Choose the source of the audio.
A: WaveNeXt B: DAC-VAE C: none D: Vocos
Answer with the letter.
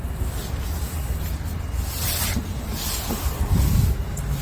C